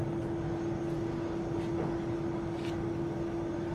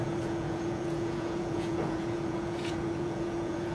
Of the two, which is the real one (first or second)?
first